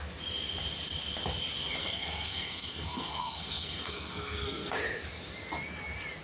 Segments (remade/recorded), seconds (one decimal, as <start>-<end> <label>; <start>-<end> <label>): 0.0-1.8 recorded; 1.8-4.7 remade; 4.7-6.2 recorded